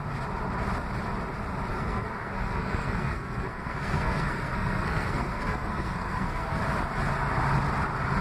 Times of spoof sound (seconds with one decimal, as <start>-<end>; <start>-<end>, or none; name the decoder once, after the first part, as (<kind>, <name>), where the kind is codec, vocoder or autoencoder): 1.7-6.6 (codec, SNAC)